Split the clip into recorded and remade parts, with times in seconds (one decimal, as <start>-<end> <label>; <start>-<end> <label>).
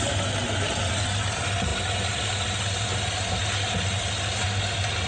0.0-5.1 recorded